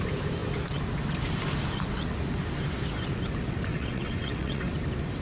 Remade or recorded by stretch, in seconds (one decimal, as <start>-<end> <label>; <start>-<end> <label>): 0.0-3.7 recorded; 3.7-4.7 remade; 4.7-5.2 recorded